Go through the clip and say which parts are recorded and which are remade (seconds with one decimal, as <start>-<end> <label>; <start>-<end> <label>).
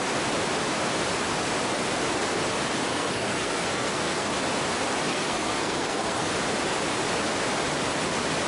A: 0.0-2.9 recorded; 2.9-4.3 remade; 4.3-5.1 recorded; 5.1-6.3 remade; 6.3-8.5 recorded